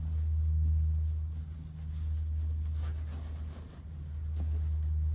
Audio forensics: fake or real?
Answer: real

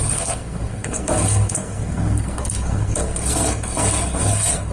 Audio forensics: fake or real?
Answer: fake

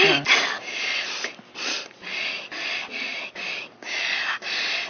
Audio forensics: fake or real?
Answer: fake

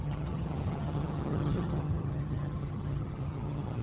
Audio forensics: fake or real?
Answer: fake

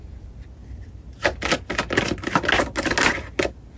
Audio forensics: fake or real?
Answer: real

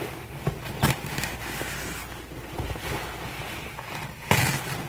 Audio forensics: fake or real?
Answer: fake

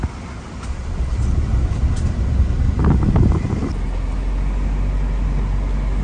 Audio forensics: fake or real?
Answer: real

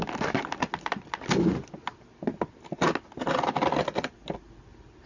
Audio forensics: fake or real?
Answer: real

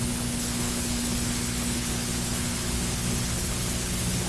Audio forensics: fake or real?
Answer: fake